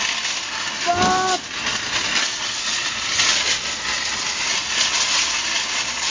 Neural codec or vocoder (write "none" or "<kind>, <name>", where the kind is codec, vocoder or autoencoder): none